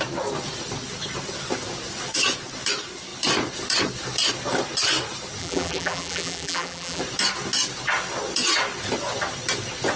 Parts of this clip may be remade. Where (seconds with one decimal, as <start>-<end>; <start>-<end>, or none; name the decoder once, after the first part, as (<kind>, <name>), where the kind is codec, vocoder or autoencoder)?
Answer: 5.4-7.0 (vocoder, BigVGAN v2)